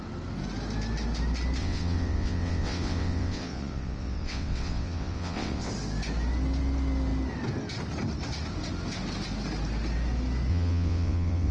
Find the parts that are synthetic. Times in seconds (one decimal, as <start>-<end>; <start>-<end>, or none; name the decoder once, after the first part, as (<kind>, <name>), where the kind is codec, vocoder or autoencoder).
1.6-5.7 (vocoder, WaveNeXt); 10.5-11.5